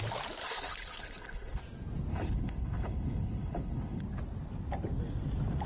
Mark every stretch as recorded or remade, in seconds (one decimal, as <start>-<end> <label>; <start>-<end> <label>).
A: 0.0-0.4 recorded; 0.4-1.6 remade; 1.6-2.1 recorded; 2.1-4.0 remade; 4.0-5.7 recorded